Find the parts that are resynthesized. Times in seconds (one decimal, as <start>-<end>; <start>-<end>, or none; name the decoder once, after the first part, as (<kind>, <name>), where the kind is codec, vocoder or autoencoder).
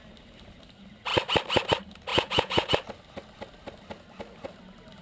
2.1-2.7 (vocoder, Vocos)